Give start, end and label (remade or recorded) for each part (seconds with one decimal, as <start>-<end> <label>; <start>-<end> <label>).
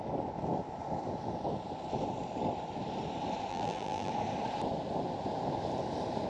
0.0-3.5 recorded; 3.5-4.1 remade; 4.1-6.3 recorded